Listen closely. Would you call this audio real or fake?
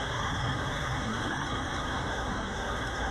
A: fake